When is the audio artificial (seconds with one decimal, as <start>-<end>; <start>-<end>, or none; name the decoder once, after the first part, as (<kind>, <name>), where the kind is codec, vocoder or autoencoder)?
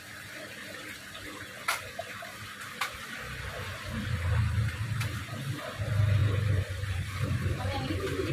6.2-8.3 (vocoder, BigVGAN v2)